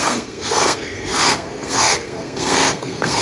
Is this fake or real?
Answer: fake